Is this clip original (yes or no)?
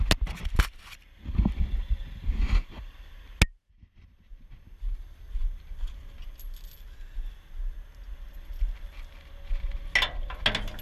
yes